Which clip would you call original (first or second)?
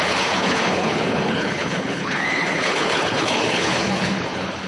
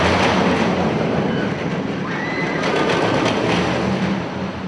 second